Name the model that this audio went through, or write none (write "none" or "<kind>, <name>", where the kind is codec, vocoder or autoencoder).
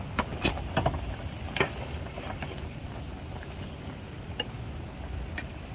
none